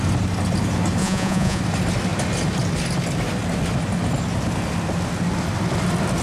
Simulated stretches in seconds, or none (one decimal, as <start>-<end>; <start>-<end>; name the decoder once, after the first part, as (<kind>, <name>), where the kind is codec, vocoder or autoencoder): 1.0-1.6 (vocoder, Vocos)